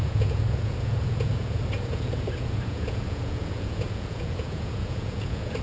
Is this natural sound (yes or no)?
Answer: no